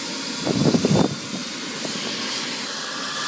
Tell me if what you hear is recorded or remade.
recorded